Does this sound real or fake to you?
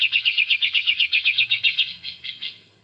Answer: fake